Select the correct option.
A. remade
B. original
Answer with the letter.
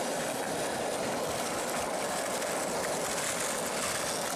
B